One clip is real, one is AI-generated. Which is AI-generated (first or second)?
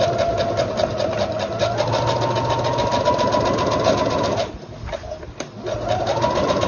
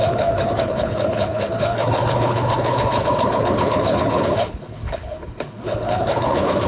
second